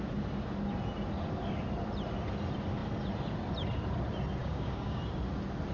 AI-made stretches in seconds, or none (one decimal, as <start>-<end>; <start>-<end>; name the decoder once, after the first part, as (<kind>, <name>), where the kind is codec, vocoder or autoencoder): 4.4-5.0 (codec, DAC)